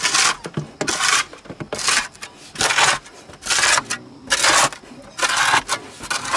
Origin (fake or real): real